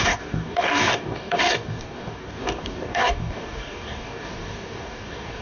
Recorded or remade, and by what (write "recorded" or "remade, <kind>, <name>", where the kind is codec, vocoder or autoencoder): remade, codec, DAC